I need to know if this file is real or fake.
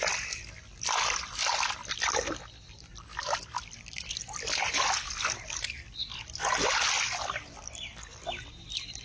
real